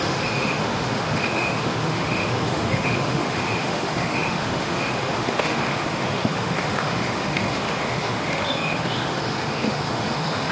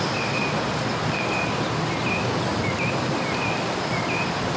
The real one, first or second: second